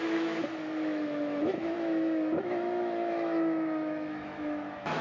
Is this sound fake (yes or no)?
yes